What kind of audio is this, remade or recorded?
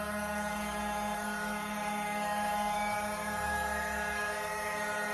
remade